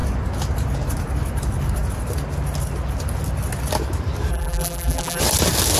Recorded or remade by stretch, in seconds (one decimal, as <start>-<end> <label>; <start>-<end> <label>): 0.0-4.3 recorded; 4.3-5.2 remade; 5.2-5.8 recorded